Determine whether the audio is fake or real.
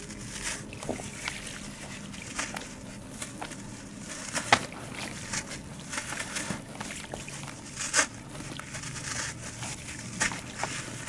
real